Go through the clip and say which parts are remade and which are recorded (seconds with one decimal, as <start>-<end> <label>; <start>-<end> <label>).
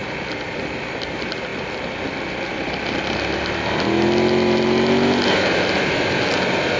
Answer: 0.0-6.8 recorded